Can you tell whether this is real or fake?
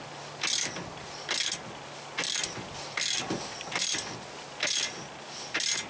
real